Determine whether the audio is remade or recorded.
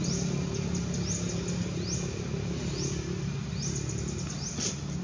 recorded